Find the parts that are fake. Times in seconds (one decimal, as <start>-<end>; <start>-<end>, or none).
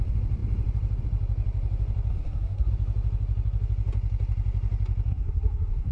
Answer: 2.1-2.7; 5.1-5.9